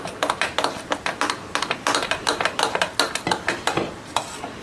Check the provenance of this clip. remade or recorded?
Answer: recorded